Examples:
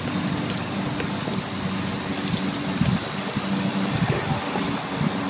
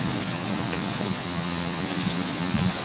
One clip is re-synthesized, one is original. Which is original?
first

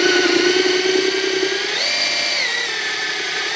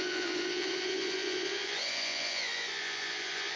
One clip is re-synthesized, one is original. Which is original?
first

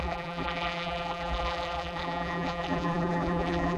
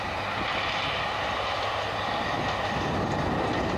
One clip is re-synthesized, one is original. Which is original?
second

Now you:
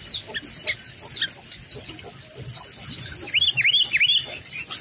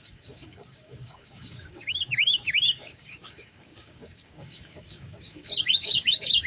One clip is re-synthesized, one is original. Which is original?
first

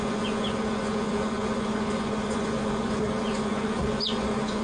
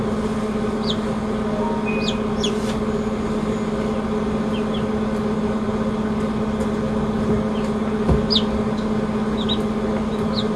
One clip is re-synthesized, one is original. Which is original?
second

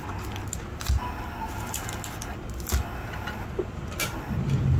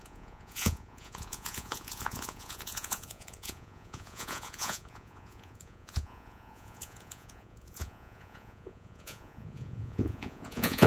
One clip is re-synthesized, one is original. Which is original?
first